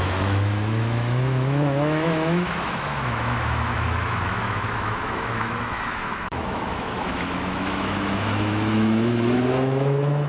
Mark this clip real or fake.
fake